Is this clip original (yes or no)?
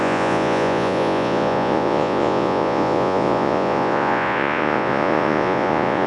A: no